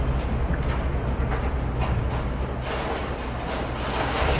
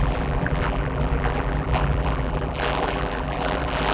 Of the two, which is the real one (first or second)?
first